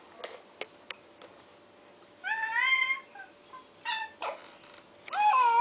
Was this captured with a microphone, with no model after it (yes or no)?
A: yes